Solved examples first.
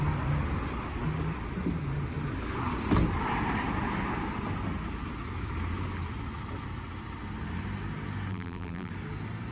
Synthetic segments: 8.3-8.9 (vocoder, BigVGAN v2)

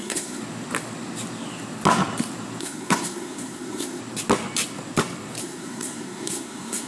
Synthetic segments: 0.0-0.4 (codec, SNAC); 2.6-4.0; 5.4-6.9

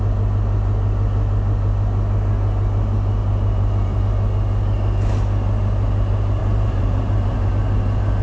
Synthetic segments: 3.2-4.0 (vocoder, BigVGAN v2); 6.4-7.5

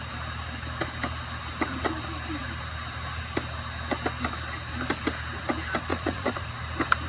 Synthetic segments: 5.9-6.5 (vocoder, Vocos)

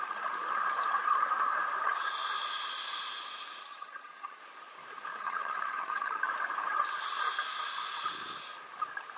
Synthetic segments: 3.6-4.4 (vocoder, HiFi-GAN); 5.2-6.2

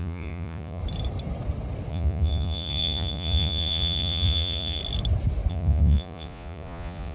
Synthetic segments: 0.0-0.8 (vocoder, Vocos); 1.9-4.8; 5.5-7.1

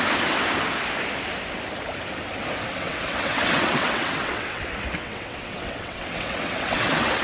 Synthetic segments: 2.7-7.2 (vocoder, WaveNeXt)